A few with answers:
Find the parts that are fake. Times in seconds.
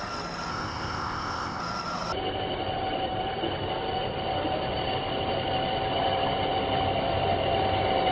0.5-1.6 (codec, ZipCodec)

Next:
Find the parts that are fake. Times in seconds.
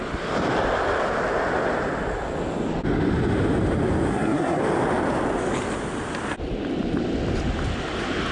4.1-4.6 (codec, SNAC)